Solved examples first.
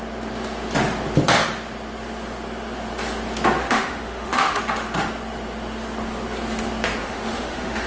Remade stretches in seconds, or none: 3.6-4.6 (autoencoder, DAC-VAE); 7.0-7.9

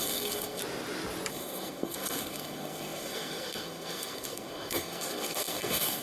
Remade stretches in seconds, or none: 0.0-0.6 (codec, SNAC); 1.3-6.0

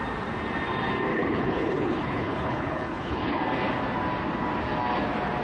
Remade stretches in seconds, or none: 1.1-3.4 (codec, HILCodec)

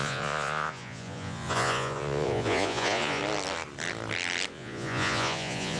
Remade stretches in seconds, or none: 0.0-3.2 (vocoder, Vocos); 4.5-5.8

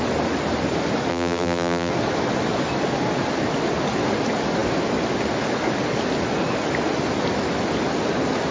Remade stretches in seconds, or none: 1.1-1.9 (vocoder, BigVGAN v2)